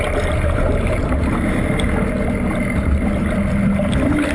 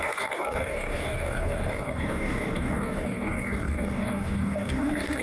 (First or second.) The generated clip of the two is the second